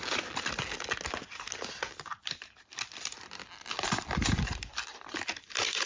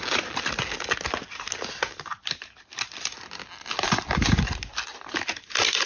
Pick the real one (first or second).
second